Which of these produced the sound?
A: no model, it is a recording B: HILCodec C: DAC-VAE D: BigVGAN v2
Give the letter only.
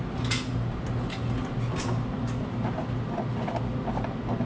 A